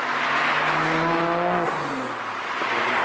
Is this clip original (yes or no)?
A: yes